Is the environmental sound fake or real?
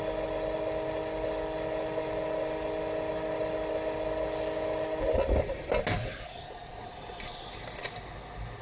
real